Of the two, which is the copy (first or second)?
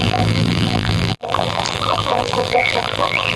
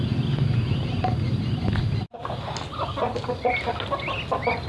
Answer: first